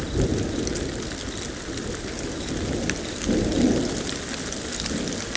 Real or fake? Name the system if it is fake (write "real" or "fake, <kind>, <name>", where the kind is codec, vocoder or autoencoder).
real